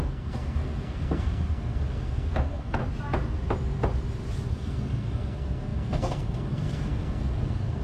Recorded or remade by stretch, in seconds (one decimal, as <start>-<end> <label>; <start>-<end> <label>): 0.0-2.8 remade; 2.8-4.5 recorded; 4.5-7.8 remade